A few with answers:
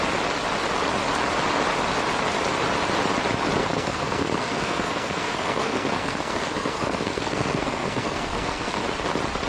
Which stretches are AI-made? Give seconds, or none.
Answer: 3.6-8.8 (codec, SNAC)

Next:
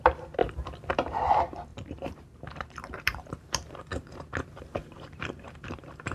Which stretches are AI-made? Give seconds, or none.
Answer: 0.0-0.4 (vocoder, BigVGAN v2); 0.9-6.1

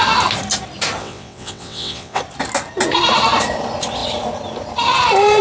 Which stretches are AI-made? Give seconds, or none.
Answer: 1.0-2.2 (vocoder, WaveNeXt)

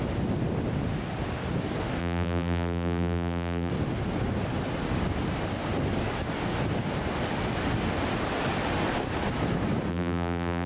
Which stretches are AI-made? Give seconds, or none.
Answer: 2.0-3.7 (vocoder, BigVGAN v2); 9.9-10.7

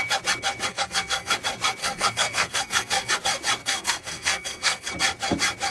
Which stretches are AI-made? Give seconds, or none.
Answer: 0.7-1.3 (codec, SNAC); 1.8-3.1; 3.6-4.9

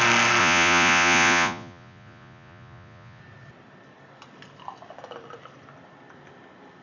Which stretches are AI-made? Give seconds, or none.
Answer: 0.4-3.2 (vocoder, Vocos)

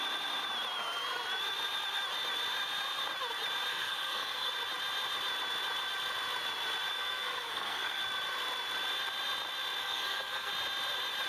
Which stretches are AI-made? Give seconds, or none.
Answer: 3.7-4.5 (codec, SNAC); 6.9-8.0; 9.8-10.5

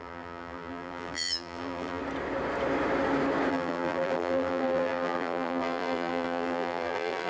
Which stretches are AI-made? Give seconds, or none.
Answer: 0.0-2.0 (vocoder, BigVGAN v2); 3.5-7.3